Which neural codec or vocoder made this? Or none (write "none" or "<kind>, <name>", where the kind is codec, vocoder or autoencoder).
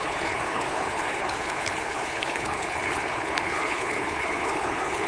codec, HILCodec